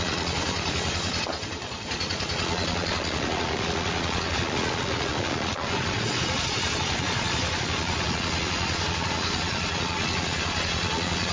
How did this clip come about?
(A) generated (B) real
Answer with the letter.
A